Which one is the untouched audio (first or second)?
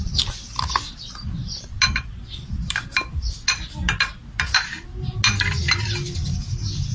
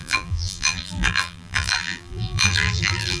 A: first